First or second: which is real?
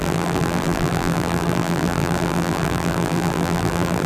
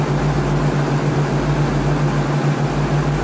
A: second